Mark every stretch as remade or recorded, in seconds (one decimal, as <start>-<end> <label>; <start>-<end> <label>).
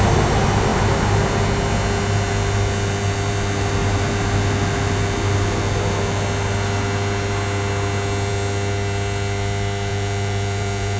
0.0-9.9 recorded; 9.9-11.0 remade